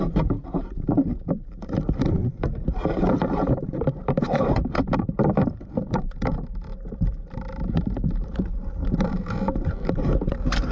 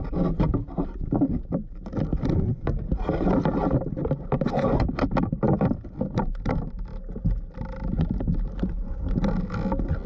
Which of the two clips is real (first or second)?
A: second